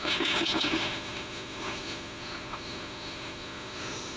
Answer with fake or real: fake